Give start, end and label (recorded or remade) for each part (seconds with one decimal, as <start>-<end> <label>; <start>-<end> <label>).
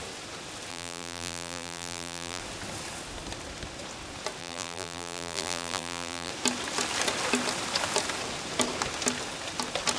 0.0-0.7 recorded; 0.7-2.4 remade; 2.4-4.4 recorded; 4.4-6.3 remade; 6.3-10.0 recorded